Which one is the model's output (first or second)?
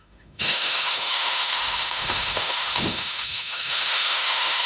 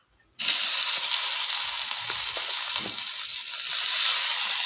first